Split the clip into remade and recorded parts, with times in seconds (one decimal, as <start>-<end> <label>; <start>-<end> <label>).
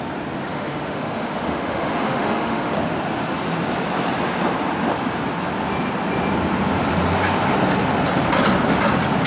0.0-0.5 recorded; 0.5-2.7 remade; 2.7-9.3 recorded